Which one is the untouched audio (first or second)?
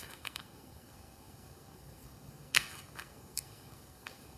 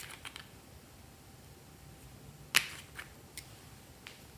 second